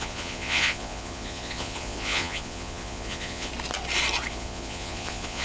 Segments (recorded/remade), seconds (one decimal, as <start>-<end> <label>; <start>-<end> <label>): 0.0-3.5 remade; 3.5-4.3 recorded; 4.3-5.4 remade